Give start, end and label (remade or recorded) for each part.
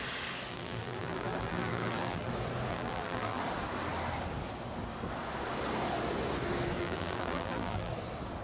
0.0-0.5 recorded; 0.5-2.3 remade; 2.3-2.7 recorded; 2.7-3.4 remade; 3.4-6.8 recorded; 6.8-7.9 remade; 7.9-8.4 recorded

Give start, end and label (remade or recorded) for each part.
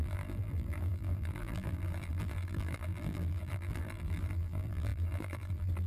0.0-5.9 remade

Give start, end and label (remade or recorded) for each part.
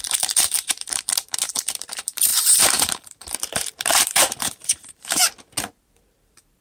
0.0-5.2 remade; 5.2-5.7 recorded; 5.7-6.6 remade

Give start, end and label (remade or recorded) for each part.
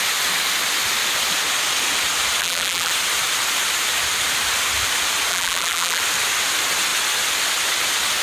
0.0-2.4 recorded; 2.4-2.9 remade; 2.9-5.3 recorded; 5.3-6.0 remade; 6.0-8.2 recorded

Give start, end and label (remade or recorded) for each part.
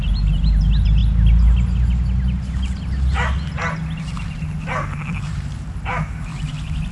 0.0-1.0 remade; 1.0-4.6 recorded; 4.6-6.3 remade; 6.3-6.9 recorded